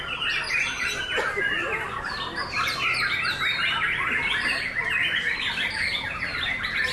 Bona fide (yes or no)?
yes